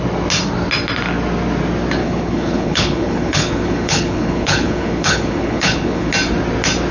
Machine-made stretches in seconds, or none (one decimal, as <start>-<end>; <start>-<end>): 2.0-6.1

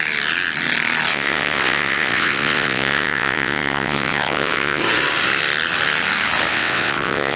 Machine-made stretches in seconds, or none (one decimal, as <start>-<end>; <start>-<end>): 1.1-4.8; 6.5-7.4

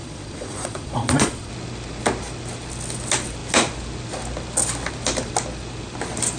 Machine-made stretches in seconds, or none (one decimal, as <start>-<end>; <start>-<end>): 0.0-1.5

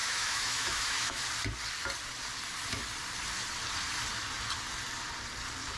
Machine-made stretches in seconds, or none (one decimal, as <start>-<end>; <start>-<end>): 0.0-1.2